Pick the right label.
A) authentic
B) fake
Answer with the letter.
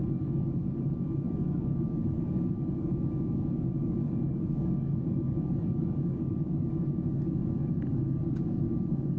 B